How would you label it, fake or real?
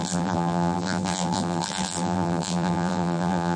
fake